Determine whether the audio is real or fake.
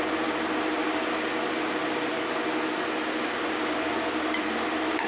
real